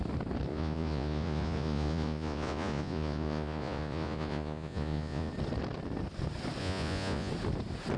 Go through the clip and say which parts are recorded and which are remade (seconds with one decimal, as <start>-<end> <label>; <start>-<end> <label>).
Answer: 0.0-0.5 recorded; 0.5-5.3 remade; 5.3-6.6 recorded; 6.6-7.3 remade; 7.3-8.0 recorded